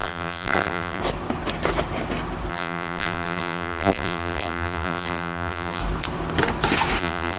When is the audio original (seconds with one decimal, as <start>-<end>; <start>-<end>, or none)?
1.0-2.5; 5.8-7.0